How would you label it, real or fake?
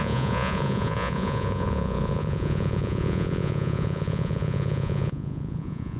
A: fake